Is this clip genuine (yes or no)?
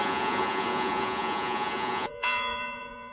no